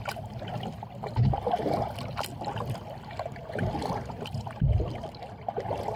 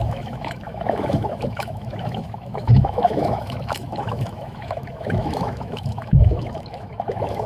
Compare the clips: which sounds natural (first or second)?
first